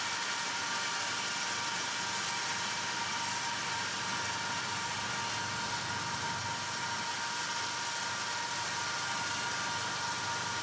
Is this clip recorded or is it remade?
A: recorded